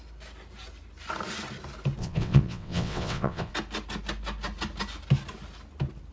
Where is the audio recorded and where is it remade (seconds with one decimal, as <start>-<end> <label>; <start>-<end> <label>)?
0.0-2.0 recorded; 2.0-3.5 remade; 3.5-6.1 recorded